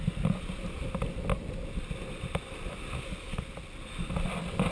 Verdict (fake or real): real